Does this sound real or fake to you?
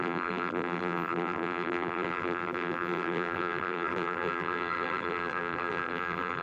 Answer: fake